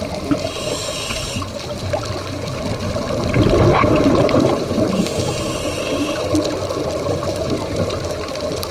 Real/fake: real